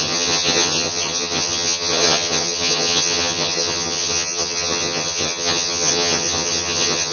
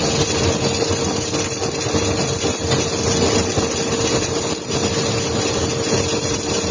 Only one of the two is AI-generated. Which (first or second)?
first